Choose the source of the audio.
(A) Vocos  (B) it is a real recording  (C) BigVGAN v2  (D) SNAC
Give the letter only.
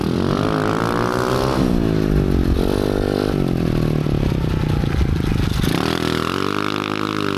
B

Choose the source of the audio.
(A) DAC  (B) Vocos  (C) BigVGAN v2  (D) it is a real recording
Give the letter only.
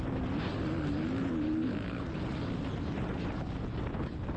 D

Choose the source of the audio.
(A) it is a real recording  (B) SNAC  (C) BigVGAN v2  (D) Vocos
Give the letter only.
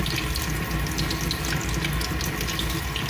A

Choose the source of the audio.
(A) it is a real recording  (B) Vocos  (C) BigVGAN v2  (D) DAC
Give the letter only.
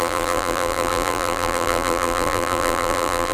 C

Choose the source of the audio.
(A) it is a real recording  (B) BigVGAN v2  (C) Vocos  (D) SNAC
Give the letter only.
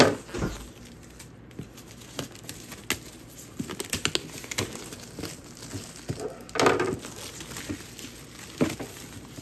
A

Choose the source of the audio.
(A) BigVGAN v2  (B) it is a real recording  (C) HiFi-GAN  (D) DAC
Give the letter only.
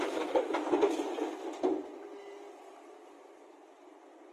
B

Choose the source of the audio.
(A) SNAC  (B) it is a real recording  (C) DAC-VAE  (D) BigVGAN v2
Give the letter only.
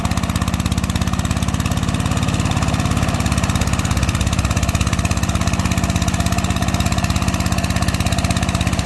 B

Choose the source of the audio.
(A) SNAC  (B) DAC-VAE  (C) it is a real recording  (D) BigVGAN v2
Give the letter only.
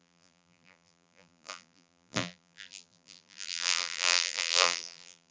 D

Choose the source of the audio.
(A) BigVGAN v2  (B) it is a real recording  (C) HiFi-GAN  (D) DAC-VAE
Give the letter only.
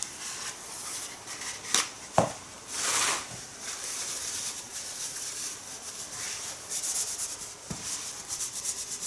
A